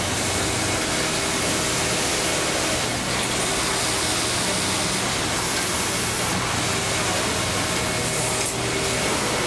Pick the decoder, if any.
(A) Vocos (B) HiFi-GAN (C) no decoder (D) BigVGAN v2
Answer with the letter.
C